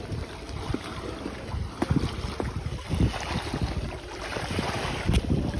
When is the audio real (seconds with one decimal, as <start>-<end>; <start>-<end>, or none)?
0.0-4.3; 4.8-5.6